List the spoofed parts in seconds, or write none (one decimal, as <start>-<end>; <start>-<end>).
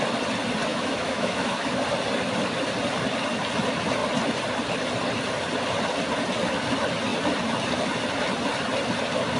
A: 0.7-1.7